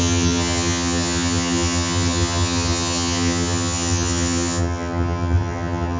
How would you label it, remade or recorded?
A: remade